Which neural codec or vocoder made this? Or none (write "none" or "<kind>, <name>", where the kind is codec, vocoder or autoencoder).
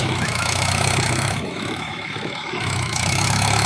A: autoencoder, DAC-VAE